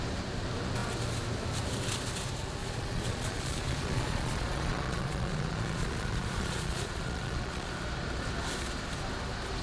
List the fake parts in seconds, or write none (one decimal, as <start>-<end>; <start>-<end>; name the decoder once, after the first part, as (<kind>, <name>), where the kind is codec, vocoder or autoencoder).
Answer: 2.6-7.7 (vocoder, Vocos)